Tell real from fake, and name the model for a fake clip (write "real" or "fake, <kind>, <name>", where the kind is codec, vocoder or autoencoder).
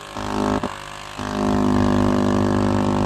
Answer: real